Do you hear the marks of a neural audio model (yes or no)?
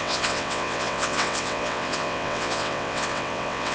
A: yes